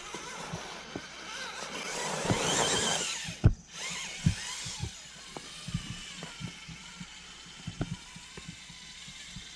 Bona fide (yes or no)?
yes